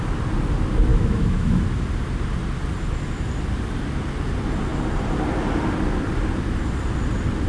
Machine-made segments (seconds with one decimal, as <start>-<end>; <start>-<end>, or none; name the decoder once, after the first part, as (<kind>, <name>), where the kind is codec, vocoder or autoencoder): 0.9-1.6 (autoencoder, DAC-VAE)